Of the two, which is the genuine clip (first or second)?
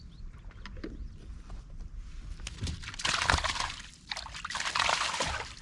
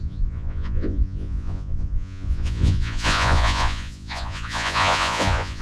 first